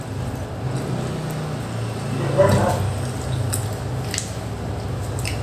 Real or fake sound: real